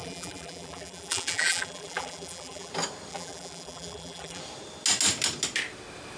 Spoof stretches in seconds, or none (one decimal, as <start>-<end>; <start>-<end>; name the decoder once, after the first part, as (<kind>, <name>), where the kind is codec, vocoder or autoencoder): 0.0-2.7 (vocoder, BigVGAN v2); 3.1-4.4